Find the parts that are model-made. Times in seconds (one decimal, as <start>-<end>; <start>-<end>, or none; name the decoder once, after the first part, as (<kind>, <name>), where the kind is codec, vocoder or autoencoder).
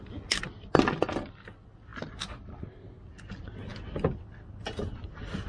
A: none